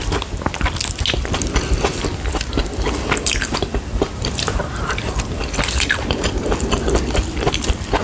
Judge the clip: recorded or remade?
recorded